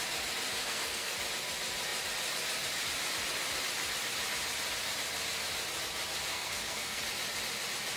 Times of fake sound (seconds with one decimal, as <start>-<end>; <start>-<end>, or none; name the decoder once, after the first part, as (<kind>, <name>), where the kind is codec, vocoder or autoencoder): 0.5-1.1 (codec, SNAC); 6.3-7.0